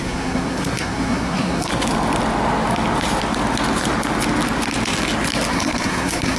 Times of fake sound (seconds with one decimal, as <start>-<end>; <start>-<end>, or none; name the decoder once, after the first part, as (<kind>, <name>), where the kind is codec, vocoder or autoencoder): 0.0-1.7 (codec, SNAC); 5.5-6.4